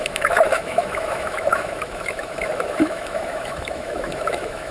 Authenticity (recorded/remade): remade